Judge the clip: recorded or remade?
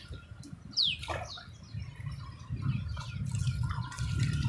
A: recorded